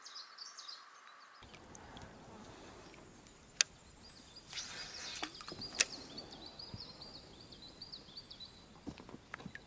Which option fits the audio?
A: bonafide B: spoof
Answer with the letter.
A